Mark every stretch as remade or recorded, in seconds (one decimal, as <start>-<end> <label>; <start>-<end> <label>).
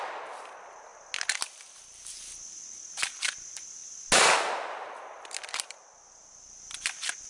0.0-7.3 recorded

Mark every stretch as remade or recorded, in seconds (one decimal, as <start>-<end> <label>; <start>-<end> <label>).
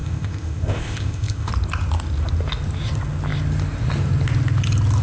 0.0-1.5 remade; 1.5-5.0 recorded